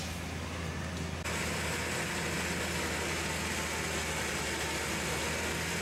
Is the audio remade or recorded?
recorded